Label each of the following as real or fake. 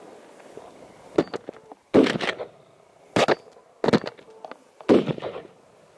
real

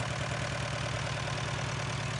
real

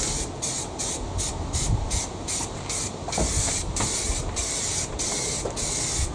real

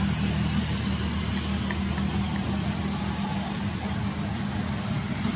real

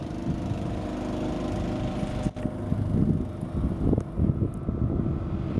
real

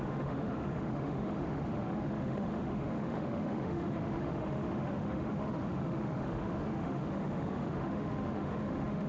fake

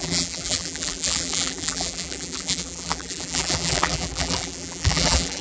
fake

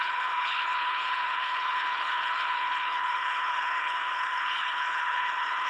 fake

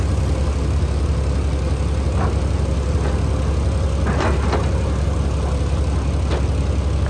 real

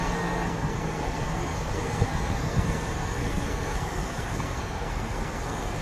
fake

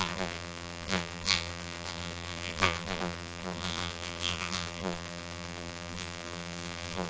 fake